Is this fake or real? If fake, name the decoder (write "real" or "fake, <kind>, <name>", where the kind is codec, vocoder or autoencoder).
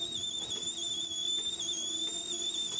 real